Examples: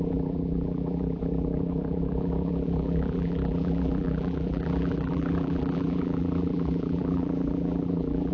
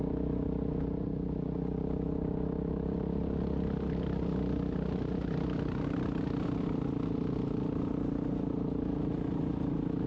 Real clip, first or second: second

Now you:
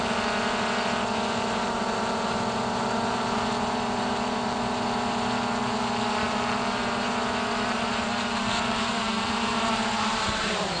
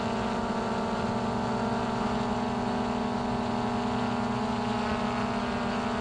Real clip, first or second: second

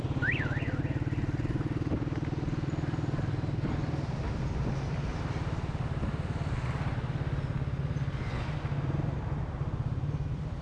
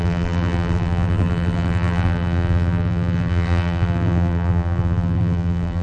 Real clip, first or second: first